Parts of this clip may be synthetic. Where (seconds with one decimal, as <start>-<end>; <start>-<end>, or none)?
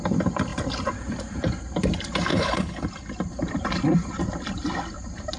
2.3-2.8